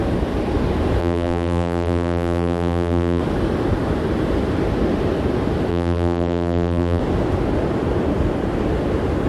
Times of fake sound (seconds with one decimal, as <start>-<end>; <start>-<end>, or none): 1.0-3.2; 5.7-7.0